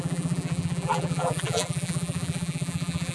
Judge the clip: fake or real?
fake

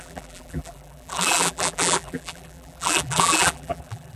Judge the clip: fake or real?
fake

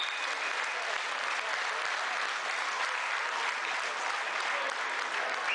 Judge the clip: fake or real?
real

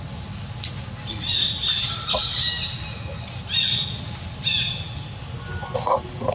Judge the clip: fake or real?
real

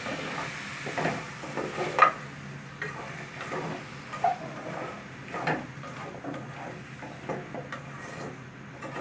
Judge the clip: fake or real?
real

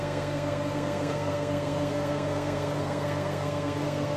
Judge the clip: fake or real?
fake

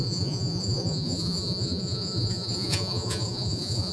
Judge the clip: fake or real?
fake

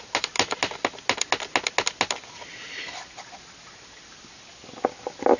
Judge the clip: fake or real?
real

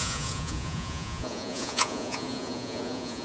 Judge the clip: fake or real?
fake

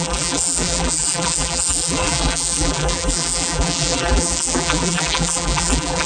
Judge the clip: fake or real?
fake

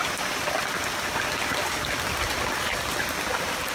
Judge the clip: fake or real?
real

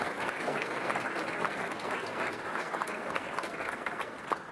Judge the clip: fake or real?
fake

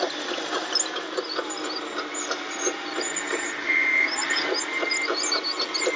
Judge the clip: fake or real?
real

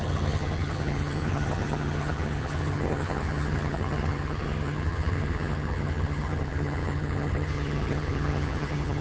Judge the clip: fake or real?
fake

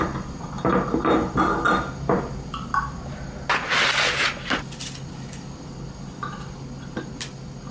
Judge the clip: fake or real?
real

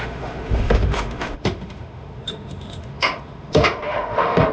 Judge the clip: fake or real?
fake